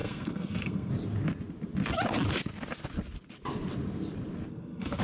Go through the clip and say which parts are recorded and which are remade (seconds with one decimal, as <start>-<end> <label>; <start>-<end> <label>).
0.0-0.9 remade; 0.9-4.5 recorded; 4.5-5.0 remade